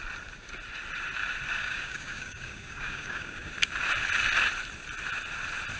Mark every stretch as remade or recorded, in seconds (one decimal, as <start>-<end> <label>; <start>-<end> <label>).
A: 0.0-1.6 recorded; 1.6-3.5 remade; 3.5-5.8 recorded